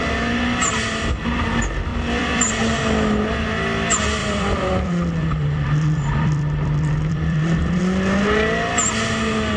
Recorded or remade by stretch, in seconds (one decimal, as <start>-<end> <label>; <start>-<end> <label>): 0.0-1.9 recorded; 1.9-2.5 remade; 2.5-4.2 recorded; 4.2-7.8 remade; 7.8-9.6 recorded